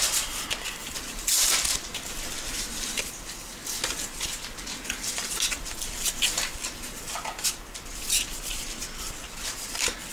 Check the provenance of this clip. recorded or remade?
remade